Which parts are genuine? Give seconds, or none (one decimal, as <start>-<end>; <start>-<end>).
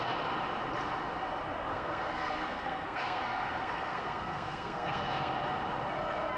0.0-1.7; 5.3-6.4